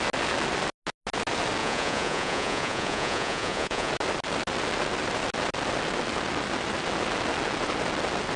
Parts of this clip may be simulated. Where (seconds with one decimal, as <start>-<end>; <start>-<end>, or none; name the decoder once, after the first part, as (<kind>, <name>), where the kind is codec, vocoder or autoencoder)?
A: 1.6-3.9 (vocoder, Vocos)